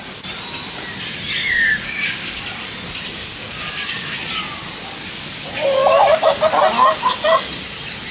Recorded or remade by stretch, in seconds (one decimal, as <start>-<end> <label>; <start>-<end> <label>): 0.0-1.4 recorded; 1.4-2.4 remade; 2.4-3.2 recorded; 3.2-4.2 remade; 4.2-8.1 recorded